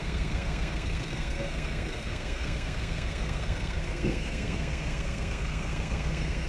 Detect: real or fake fake